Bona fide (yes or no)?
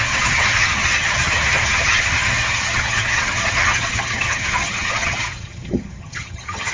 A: no